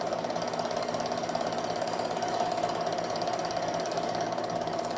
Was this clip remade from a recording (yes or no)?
yes